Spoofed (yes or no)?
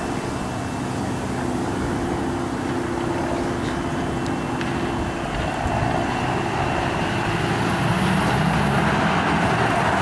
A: no